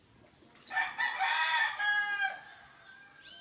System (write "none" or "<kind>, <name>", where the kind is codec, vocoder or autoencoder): none